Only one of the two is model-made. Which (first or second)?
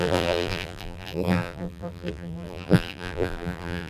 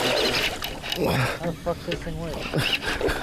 first